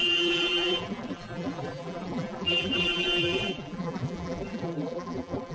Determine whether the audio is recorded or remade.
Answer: remade